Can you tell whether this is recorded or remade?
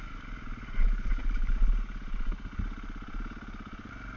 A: recorded